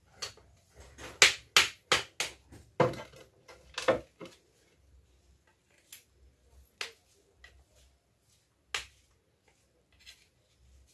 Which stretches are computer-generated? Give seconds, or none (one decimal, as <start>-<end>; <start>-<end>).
none